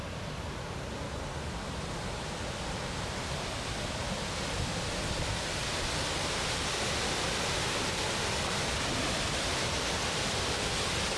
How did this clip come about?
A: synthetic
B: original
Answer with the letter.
B